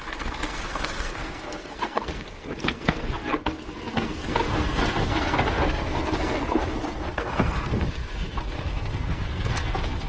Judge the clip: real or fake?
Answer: fake